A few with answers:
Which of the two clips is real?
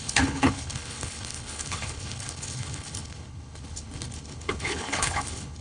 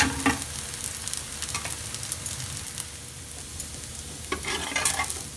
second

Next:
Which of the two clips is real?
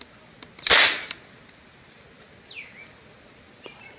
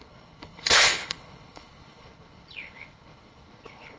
first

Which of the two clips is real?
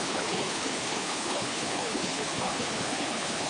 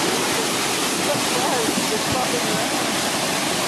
second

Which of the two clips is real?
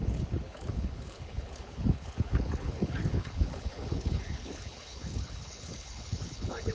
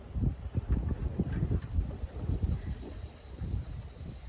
second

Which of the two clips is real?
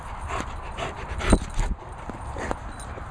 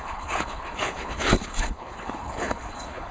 first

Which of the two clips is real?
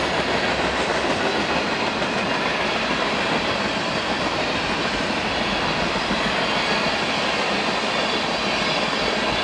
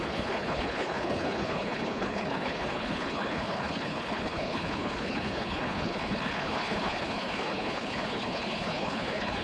first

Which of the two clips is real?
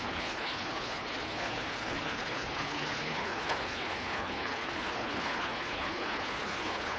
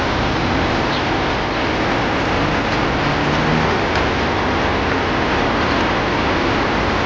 second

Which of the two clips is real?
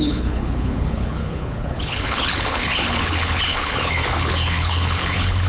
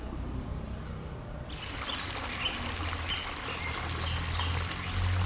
second